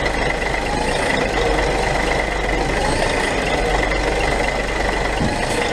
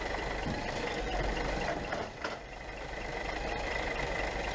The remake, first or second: second